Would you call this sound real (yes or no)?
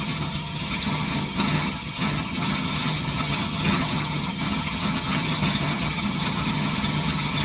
no